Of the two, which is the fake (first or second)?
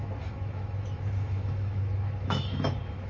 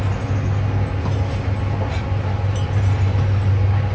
first